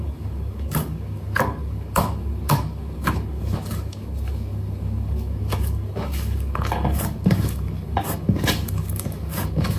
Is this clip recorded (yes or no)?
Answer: no